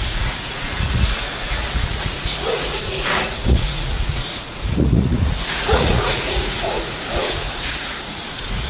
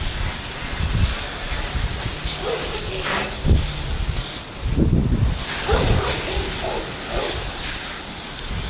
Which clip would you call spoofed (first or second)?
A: first